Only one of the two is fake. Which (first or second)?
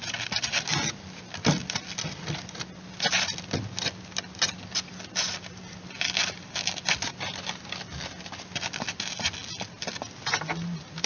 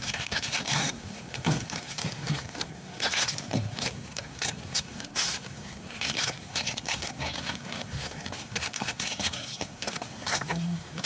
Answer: second